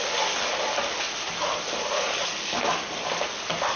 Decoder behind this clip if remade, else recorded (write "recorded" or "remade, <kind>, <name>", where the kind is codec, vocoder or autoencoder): recorded